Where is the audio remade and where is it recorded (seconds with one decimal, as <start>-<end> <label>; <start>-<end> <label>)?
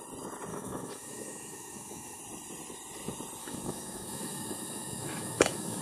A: 0.0-0.5 recorded; 0.5-2.2 remade; 2.2-3.4 recorded; 3.4-5.8 remade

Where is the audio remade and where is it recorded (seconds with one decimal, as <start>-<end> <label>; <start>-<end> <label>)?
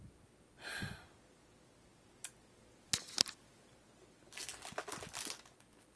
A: 0.0-6.0 recorded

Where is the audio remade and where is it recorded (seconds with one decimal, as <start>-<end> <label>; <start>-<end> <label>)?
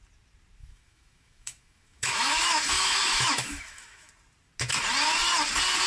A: 0.0-0.6 recorded; 0.6-4.1 remade; 4.1-5.9 recorded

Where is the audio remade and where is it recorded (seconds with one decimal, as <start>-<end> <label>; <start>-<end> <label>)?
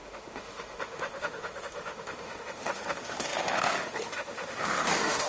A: 0.0-5.3 remade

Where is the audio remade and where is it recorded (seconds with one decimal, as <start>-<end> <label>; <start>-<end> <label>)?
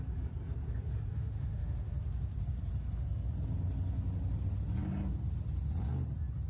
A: 0.0-1.1 recorded; 1.1-1.9 remade; 1.9-6.5 recorded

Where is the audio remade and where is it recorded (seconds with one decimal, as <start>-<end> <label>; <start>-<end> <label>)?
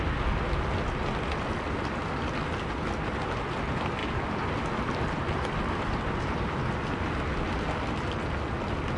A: 0.0-9.0 recorded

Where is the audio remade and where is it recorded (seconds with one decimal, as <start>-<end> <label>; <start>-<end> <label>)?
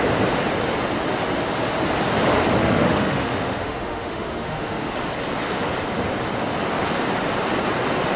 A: 0.0-2.6 recorded; 2.6-4.9 remade; 4.9-8.2 recorded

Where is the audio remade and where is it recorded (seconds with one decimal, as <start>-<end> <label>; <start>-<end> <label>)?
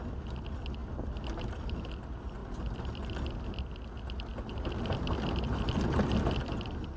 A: 0.0-7.0 recorded